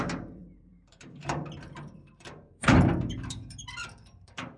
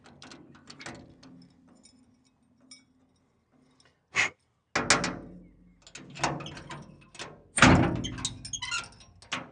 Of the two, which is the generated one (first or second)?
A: first